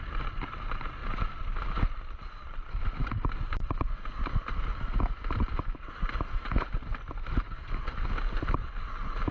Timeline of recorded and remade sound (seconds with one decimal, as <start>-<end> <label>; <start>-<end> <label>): 0.0-9.3 recorded